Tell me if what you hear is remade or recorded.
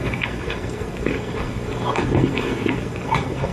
remade